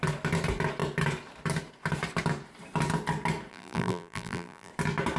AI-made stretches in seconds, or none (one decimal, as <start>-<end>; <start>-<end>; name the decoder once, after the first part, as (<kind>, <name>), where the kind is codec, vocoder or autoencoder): 3.5-4.7 (vocoder, BigVGAN v2)